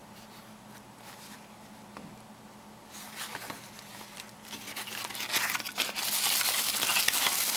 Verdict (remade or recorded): recorded